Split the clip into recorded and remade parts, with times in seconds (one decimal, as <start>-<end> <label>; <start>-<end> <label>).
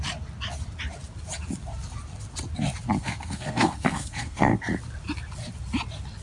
0.0-3.0 recorded; 3.0-4.6 remade; 4.6-6.2 recorded